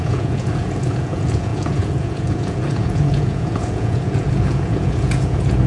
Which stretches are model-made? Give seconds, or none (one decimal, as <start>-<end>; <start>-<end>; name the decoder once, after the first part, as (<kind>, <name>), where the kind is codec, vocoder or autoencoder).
0.0-5.7 (vocoder, Vocos)